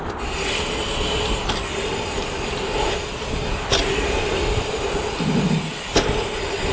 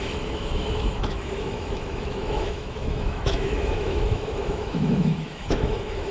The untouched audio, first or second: first